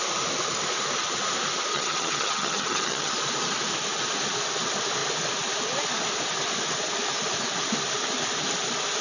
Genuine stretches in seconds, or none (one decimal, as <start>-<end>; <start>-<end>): 0.0-1.7; 3.1-9.0

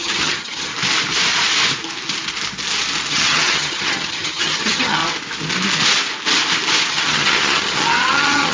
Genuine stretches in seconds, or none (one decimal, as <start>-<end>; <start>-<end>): 0.7-3.1; 5.0-6.9

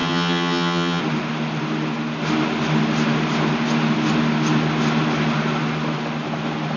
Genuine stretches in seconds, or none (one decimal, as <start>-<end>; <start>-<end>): 1.0-6.8

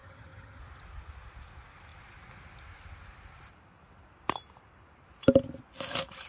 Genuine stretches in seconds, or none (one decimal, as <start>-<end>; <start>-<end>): 0.6-6.3

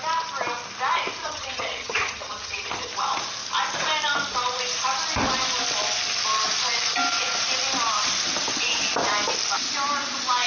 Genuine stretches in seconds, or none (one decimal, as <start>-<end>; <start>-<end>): 0.0-1.2; 2.9-10.5

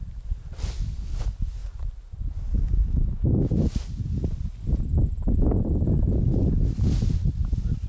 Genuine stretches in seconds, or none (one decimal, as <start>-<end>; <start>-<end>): 0.0-7.9

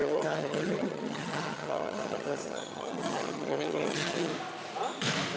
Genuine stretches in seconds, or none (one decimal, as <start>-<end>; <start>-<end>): 4.3-5.4